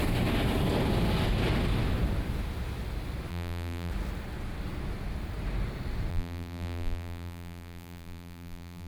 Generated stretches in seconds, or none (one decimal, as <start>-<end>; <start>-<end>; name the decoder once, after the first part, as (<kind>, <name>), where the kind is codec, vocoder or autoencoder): 3.3-3.9 (vocoder, BigVGAN v2); 6.1-8.9